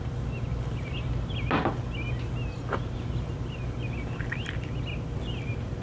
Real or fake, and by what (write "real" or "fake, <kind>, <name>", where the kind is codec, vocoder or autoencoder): real